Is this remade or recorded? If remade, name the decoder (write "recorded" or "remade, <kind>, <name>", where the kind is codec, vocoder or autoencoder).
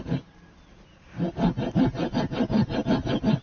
recorded